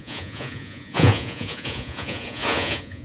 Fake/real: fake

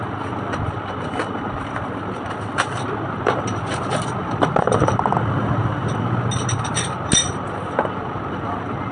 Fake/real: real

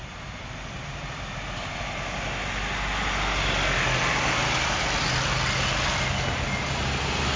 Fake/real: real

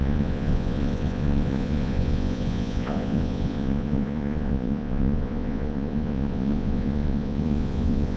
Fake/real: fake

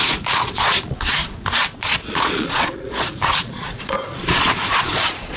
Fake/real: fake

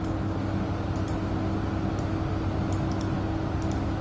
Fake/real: real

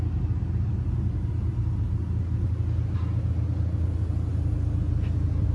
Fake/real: real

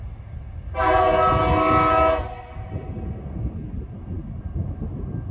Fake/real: real